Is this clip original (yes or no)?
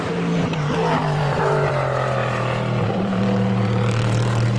no